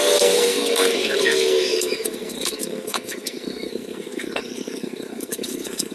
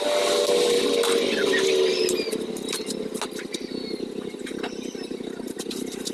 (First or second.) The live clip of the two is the second